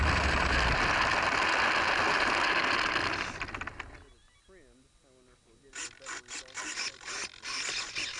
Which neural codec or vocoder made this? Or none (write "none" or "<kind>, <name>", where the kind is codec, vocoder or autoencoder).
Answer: none